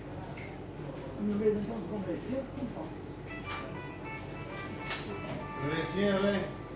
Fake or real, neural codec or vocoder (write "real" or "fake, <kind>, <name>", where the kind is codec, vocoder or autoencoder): real